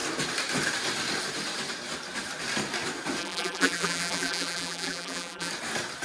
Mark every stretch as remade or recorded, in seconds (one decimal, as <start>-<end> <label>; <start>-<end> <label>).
0.0-3.2 recorded; 3.2-5.5 remade; 5.5-6.0 recorded